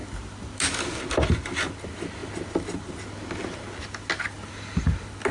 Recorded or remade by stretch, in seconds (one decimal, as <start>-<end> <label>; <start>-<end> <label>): 0.0-5.3 recorded